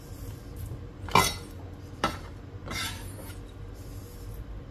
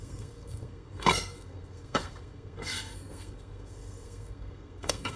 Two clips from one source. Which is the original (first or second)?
first